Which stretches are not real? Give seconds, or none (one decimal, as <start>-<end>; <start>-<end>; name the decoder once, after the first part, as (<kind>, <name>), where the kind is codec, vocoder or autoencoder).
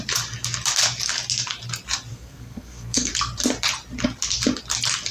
2.1-3.1 (codec, SNAC)